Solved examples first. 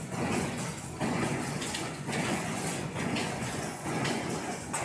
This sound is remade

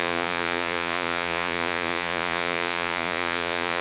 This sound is remade